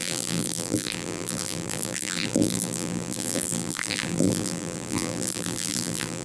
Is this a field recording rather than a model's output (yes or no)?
no